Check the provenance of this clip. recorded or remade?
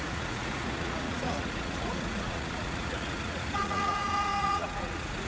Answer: remade